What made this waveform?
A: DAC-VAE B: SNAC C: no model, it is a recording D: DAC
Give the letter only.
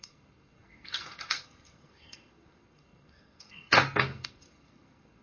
B